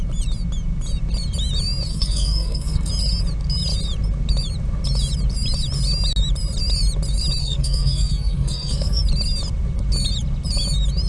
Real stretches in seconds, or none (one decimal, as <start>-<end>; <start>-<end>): 0.0-1.9; 2.9-7.4; 9.0-11.1